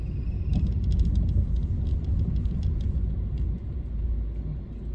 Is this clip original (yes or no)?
yes